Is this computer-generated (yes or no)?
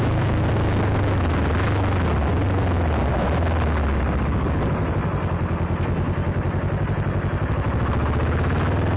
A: no